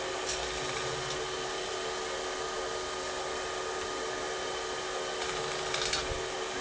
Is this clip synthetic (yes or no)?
no